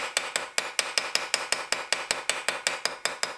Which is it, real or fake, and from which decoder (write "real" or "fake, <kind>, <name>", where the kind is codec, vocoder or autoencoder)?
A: real